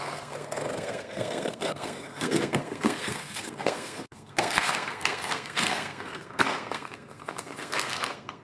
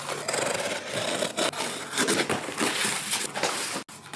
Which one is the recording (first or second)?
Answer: second